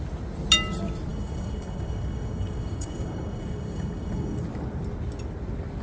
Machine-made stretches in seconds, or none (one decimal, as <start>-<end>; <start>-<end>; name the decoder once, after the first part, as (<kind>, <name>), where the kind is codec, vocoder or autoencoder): 1.1-4.4 (codec, DAC)